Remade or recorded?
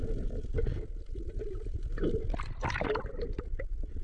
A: recorded